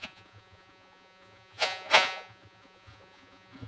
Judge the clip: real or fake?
fake